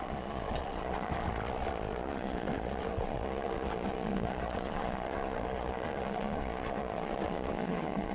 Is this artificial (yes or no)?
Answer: yes